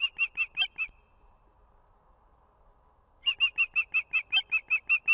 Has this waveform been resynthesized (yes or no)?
no